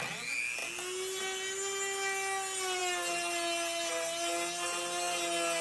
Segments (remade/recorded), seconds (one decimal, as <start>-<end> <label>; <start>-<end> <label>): 0.0-5.6 recorded